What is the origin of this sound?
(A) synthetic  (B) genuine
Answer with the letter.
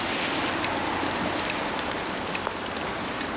B